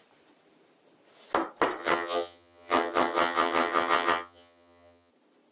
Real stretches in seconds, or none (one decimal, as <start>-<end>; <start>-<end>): 0.0-1.8; 5.1-5.5